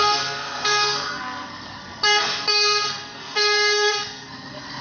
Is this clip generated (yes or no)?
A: yes